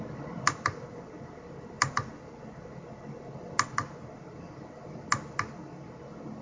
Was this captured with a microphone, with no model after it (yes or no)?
yes